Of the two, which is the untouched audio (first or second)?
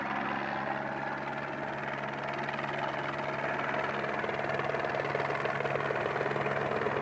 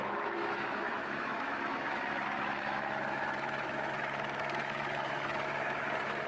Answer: first